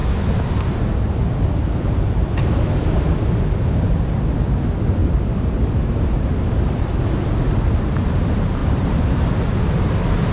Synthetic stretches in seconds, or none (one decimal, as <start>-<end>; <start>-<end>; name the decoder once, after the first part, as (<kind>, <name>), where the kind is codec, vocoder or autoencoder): 5.0-6.5 (vocoder, BigVGAN v2); 8.6-9.3